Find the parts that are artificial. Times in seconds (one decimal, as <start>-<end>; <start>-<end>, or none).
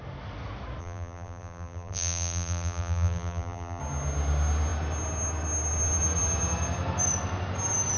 0.8-3.8